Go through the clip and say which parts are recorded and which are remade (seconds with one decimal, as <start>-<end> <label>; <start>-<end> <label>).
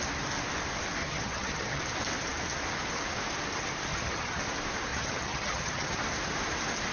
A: 0.0-1.0 recorded; 1.0-1.8 remade; 1.8-3.9 recorded; 3.9-4.4 remade; 4.4-4.9 recorded; 4.9-6.0 remade; 6.0-6.9 recorded